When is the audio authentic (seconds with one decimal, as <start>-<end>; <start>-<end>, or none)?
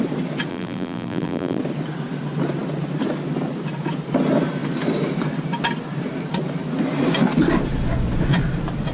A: 0.0-0.5; 1.6-8.9